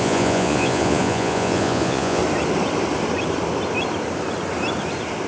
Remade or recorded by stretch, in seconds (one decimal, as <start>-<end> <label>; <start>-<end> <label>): 0.0-2.2 remade; 2.2-5.3 recorded